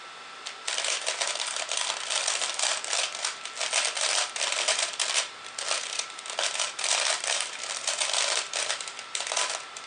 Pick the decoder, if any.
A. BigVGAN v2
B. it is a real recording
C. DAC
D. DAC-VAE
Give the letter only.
A